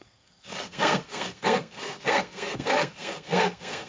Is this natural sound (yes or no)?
no